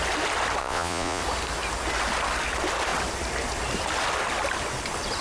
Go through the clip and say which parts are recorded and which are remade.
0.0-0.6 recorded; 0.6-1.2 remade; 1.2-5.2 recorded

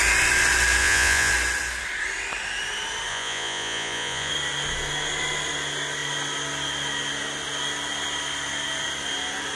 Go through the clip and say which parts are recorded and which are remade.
0.0-0.8 recorded; 0.8-1.3 remade; 1.3-3.1 recorded; 3.1-4.3 remade; 4.3-9.6 recorded

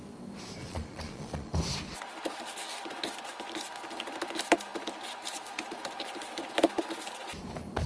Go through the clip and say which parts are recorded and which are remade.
0.0-0.6 recorded; 0.6-1.5 remade; 1.5-7.9 recorded

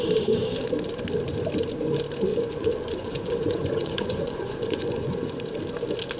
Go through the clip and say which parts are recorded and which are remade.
0.0-2.3 recorded; 2.3-5.4 remade; 5.4-6.2 recorded